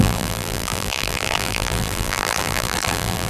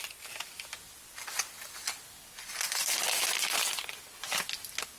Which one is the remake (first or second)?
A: first